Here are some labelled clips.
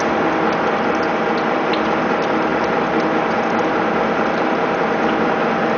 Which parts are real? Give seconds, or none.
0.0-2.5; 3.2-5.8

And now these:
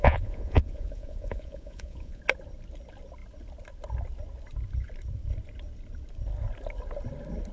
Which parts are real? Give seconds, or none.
2.2-7.5

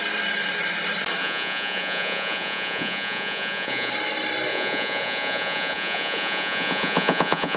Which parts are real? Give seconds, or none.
0.0-1.2; 3.9-4.5